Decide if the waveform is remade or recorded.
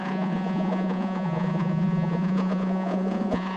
remade